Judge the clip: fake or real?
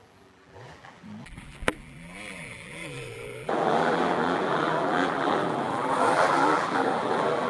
fake